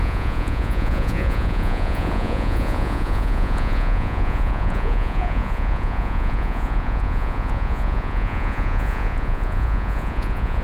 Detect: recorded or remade remade